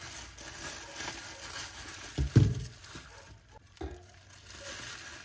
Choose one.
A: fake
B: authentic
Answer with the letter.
B